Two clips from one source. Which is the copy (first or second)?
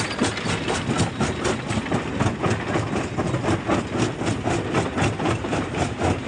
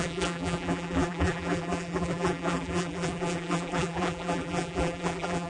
second